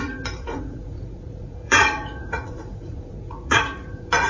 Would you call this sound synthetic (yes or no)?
yes